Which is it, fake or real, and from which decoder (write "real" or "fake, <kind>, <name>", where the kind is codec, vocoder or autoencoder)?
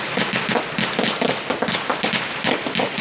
real